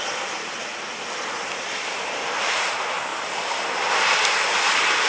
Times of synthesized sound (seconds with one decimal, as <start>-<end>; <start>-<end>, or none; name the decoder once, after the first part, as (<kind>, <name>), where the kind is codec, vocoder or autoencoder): none